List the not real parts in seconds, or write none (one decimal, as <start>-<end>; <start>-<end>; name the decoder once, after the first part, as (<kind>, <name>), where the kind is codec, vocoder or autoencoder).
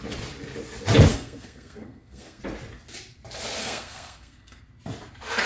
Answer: 1.1-2.4 (codec, SNAC); 3.6-4.6